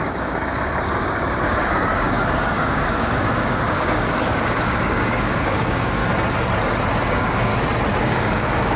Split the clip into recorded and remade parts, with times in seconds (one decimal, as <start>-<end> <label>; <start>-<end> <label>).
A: 0.0-6.0 remade; 6.0-7.1 recorded; 7.1-7.5 remade; 7.5-8.0 recorded; 8.0-8.8 remade